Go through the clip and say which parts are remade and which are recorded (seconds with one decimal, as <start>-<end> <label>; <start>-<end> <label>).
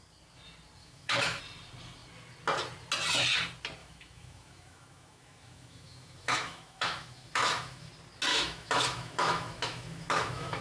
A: 0.0-0.8 recorded; 0.8-1.4 remade; 1.4-3.8 recorded; 3.8-7.9 remade; 7.9-8.3 recorded; 8.3-10.6 remade